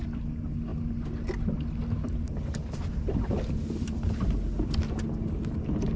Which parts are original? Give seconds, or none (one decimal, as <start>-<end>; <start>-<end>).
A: 0.0-6.0